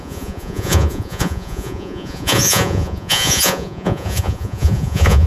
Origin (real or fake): fake